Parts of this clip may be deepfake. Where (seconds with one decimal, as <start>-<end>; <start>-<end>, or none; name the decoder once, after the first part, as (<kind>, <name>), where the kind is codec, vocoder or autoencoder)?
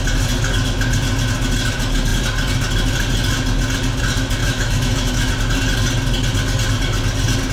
4.4-5.3 (autoencoder, DAC-VAE)